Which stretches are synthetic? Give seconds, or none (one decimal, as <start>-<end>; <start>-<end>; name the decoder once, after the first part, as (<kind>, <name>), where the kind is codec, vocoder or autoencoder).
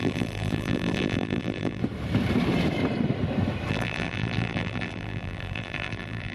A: 0.0-1.8 (vocoder, BigVGAN v2); 3.7-6.3